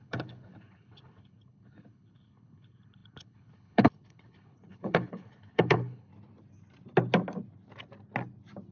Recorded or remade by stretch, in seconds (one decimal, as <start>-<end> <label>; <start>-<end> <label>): 0.0-6.1 remade; 6.1-8.7 recorded